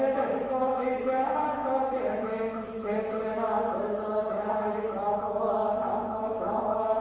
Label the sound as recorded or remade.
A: remade